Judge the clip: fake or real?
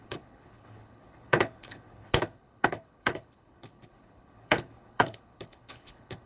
fake